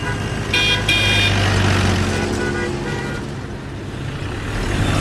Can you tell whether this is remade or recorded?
recorded